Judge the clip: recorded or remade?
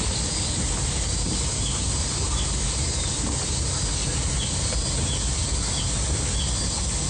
recorded